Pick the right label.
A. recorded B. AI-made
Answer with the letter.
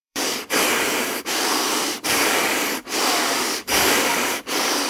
B